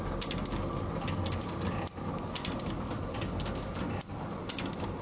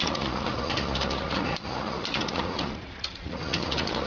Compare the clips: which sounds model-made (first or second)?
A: second